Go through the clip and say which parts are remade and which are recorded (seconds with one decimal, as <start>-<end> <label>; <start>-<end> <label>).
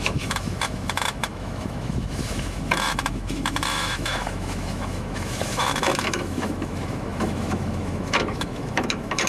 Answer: 0.0-9.3 remade